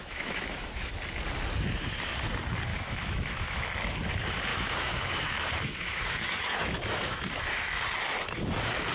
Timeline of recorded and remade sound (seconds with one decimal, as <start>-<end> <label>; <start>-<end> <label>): 0.0-0.9 remade; 0.9-2.7 recorded; 2.7-3.6 remade; 3.6-4.5 recorded; 4.5-7.4 remade; 7.4-8.9 recorded